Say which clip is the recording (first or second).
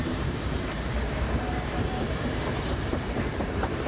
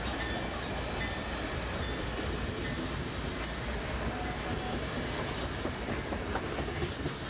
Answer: second